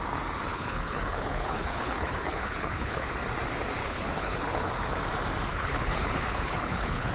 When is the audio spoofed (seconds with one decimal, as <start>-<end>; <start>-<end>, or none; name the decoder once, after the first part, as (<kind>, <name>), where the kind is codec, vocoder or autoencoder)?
0.5-3.1 (codec, HILCodec); 3.8-4.7; 5.5-7.1